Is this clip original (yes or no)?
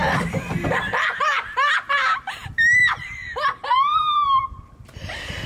no